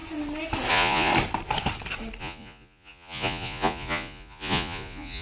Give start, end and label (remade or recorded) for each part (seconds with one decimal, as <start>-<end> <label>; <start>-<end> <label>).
0.0-0.7 recorded; 0.7-1.1 remade; 1.1-2.2 recorded; 2.2-5.2 remade